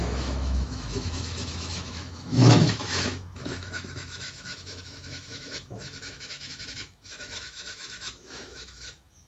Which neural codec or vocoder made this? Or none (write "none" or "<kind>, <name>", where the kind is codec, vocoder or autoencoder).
autoencoder, DAC-VAE